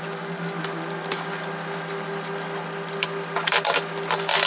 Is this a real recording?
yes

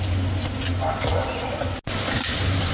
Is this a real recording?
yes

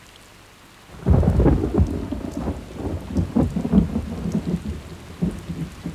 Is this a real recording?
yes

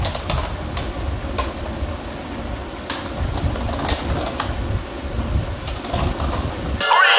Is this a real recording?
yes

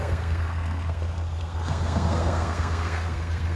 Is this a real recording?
no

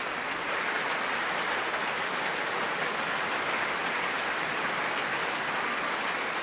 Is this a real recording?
no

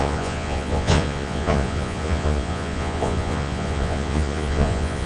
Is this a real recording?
no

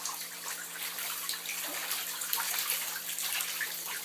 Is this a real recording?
yes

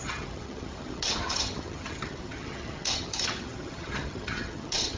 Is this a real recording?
no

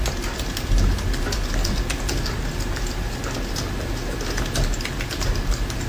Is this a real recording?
yes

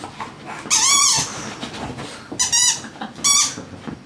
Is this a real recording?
yes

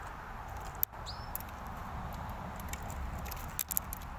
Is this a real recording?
yes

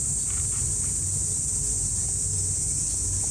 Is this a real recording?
yes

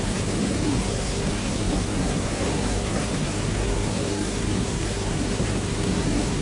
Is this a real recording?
no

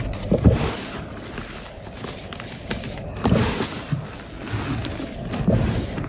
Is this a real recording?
yes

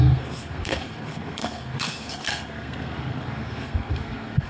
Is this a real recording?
no